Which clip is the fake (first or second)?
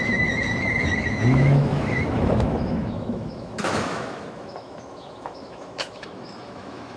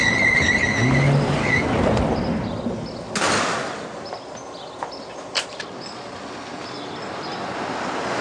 first